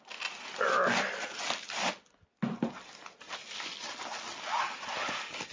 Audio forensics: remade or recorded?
recorded